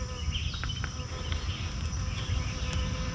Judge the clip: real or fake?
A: real